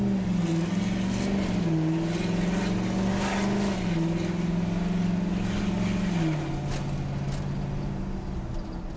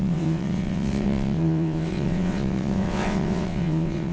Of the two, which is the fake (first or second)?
second